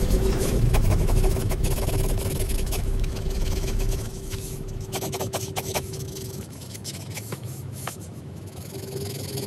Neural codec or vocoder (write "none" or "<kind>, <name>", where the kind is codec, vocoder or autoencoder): autoencoder, DAC-VAE